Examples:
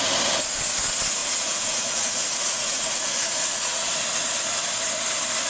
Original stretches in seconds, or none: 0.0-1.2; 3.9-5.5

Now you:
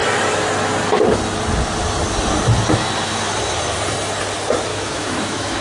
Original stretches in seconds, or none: 0.0-4.7

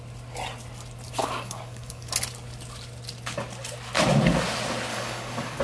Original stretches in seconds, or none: 0.0-1.2; 2.1-4.9

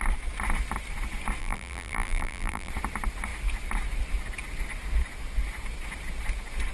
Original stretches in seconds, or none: 0.0-1.4; 2.7-6.7